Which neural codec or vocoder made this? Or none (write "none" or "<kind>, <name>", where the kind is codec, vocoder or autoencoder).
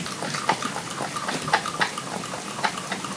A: none